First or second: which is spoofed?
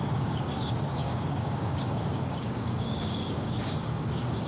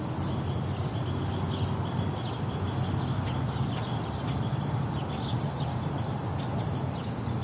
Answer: first